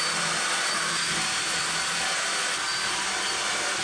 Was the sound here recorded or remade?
recorded